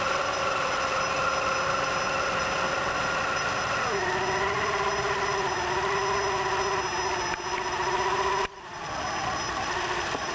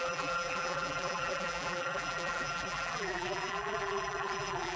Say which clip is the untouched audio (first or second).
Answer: first